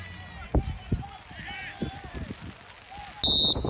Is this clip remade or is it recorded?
recorded